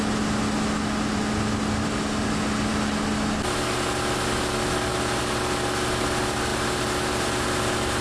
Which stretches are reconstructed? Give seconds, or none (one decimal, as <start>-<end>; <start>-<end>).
none